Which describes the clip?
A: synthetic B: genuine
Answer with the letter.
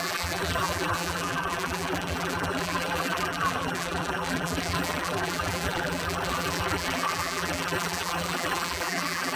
A